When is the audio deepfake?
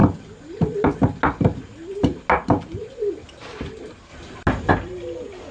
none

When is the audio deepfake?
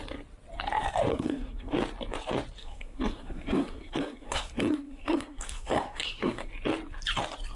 1.1-1.7 (codec, SNAC); 2.6-6.5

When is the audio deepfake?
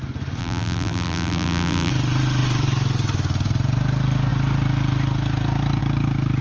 0.4-1.9 (vocoder, BigVGAN v2)